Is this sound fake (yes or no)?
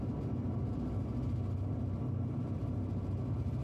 no